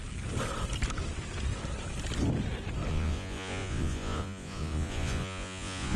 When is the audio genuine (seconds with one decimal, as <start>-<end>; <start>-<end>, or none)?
0.0-2.9